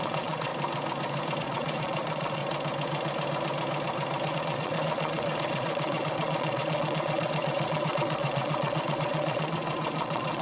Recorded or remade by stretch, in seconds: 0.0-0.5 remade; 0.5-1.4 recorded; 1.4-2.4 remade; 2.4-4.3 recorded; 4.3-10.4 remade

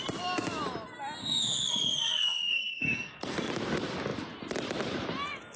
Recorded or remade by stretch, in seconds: 0.0-1.2 recorded; 1.2-3.5 remade; 3.5-5.6 recorded